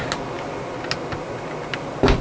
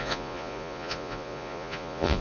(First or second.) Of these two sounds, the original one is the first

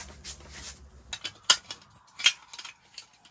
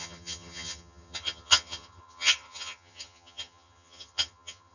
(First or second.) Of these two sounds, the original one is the first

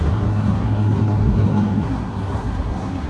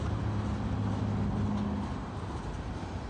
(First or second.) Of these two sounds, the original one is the second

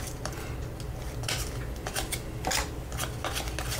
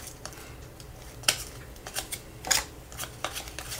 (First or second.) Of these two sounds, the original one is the first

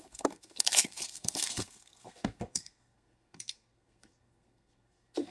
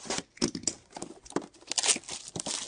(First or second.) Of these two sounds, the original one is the second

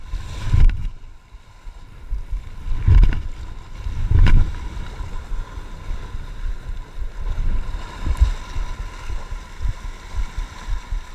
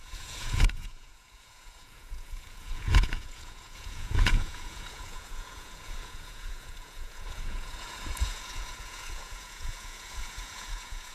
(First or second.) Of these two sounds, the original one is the first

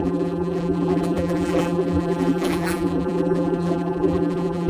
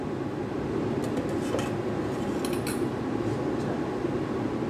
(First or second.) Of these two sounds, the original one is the second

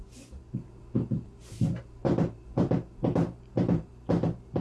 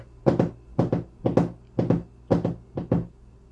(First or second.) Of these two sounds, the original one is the second